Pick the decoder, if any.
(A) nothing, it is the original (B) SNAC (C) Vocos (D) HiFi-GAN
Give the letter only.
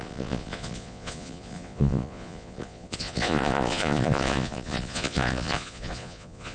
C